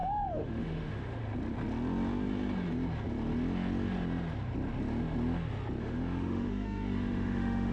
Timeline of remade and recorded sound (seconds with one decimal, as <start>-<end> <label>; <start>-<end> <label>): 0.0-1.2 remade; 1.2-5.8 recorded; 5.8-7.7 remade